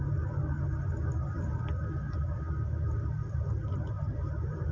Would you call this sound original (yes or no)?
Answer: yes